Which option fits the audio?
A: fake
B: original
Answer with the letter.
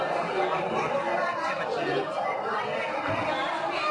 B